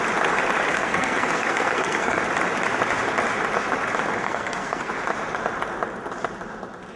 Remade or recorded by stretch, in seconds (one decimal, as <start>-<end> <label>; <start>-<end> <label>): 0.0-0.7 recorded; 0.7-2.2 remade; 2.2-4.2 recorded; 4.2-4.9 remade; 4.9-7.0 recorded